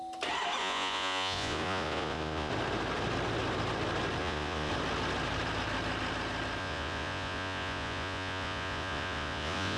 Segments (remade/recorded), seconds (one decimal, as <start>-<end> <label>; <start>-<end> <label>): 0.0-0.6 recorded; 0.6-2.5 remade; 2.5-4.2 recorded; 4.2-4.7 remade; 4.7-6.6 recorded; 6.6-9.8 remade